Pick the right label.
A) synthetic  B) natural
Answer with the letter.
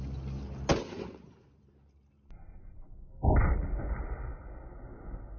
B